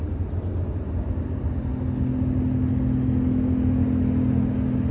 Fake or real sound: real